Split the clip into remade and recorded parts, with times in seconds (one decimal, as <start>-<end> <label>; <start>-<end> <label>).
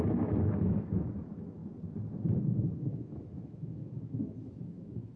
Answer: 0.0-1.6 remade; 1.6-2.6 recorded; 2.6-5.2 remade